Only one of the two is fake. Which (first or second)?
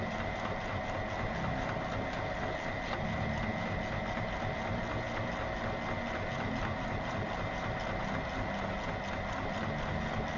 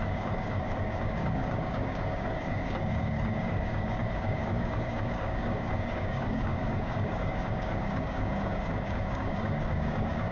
second